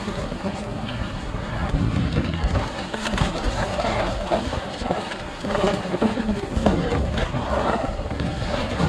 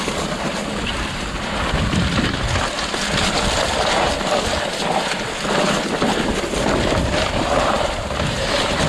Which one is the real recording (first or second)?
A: second